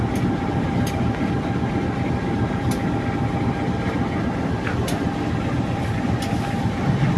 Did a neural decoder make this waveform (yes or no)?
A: no